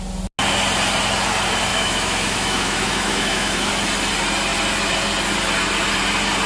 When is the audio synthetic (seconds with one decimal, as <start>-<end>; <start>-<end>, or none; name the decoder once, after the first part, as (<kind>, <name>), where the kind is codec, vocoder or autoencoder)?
1.7-3.7 (autoencoder, DAC-VAE)